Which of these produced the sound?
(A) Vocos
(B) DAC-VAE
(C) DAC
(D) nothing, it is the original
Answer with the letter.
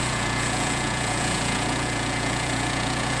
A